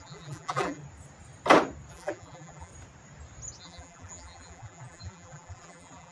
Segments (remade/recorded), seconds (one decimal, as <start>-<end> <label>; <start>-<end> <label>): 0.0-0.8 remade; 0.8-1.9 recorded; 1.9-2.7 remade; 2.7-3.6 recorded; 3.6-6.1 remade

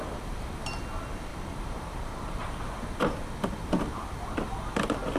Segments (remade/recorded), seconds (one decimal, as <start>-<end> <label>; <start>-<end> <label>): 0.0-0.8 remade; 0.8-1.3 recorded; 1.3-2.6 remade; 2.6-5.2 recorded

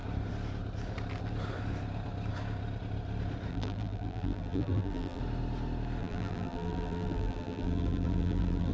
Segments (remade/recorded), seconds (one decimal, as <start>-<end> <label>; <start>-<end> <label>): 0.0-3.5 recorded; 3.5-5.2 remade; 5.2-6.0 recorded; 6.0-8.7 remade

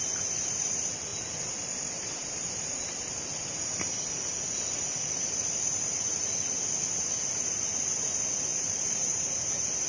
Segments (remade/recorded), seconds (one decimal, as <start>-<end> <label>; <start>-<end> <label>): 0.0-1.1 recorded; 1.1-4.1 remade; 4.1-8.5 recorded; 8.5-9.2 remade; 9.2-9.9 recorded

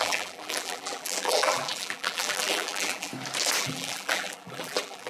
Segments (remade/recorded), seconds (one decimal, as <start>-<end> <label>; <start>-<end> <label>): 0.0-3.1 remade; 3.1-3.6 recorded; 3.6-5.1 remade